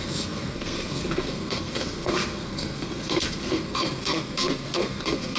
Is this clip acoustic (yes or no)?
no